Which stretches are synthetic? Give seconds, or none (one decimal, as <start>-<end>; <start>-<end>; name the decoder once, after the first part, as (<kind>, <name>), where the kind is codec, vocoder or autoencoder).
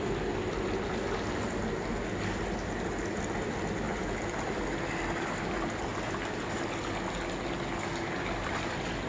3.9-4.5 (vocoder, BigVGAN v2)